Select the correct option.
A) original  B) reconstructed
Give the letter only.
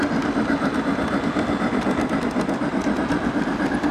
A